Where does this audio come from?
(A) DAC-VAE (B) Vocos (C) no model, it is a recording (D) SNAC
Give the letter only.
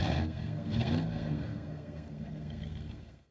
D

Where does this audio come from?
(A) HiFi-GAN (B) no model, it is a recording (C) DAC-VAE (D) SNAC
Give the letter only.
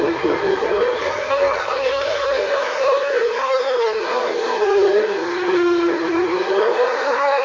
D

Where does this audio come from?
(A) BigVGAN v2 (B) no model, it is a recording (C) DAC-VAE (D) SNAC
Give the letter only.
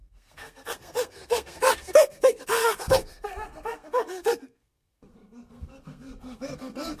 D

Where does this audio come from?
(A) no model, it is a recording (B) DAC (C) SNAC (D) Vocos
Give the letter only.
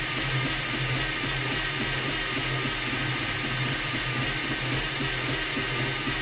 A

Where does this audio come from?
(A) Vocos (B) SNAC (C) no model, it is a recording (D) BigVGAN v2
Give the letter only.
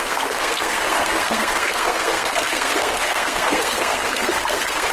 B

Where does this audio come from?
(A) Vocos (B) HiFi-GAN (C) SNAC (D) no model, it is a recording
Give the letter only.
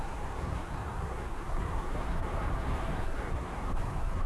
C